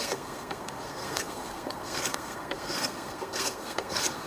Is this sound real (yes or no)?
no